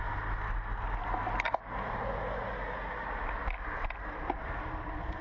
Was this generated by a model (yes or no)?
no